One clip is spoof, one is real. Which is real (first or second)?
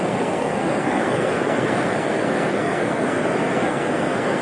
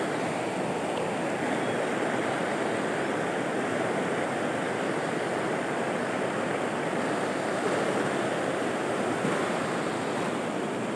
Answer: second